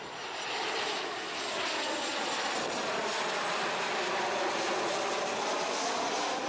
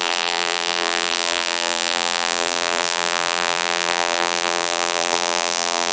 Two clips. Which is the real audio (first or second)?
first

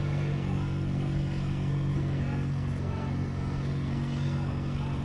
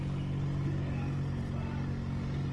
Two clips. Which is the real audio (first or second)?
second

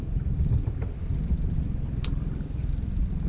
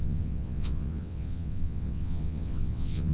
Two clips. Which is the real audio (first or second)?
first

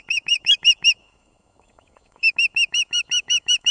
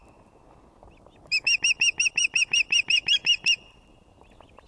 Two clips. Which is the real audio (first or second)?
second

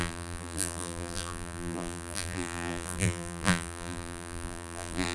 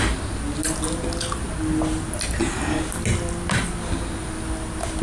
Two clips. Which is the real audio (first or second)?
second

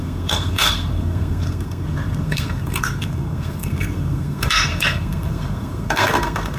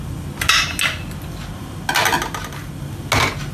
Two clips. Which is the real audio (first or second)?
second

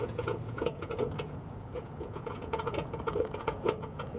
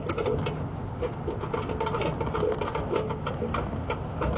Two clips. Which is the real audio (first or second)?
second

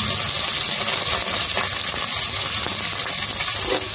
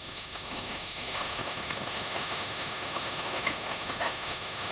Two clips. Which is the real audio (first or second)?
first